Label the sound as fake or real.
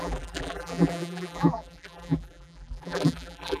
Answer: fake